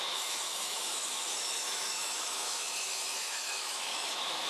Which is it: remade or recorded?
remade